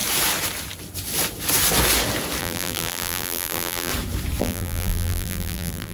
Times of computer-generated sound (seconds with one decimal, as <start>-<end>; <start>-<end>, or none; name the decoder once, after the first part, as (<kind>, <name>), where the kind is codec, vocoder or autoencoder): 2.4-3.9 (vocoder, BigVGAN v2); 4.4-5.9